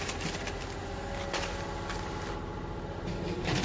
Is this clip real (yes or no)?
yes